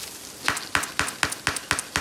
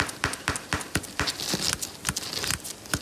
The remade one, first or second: second